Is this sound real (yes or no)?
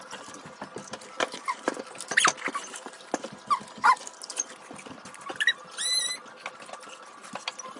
yes